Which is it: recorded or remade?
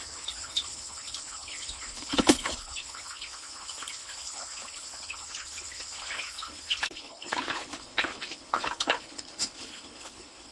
remade